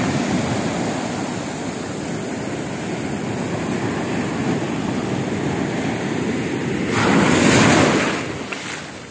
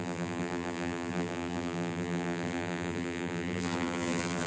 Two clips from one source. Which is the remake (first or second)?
second